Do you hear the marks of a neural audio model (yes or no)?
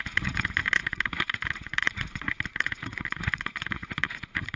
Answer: yes